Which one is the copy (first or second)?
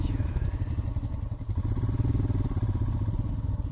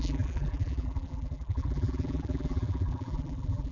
second